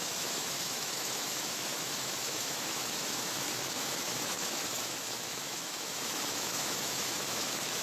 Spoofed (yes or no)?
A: yes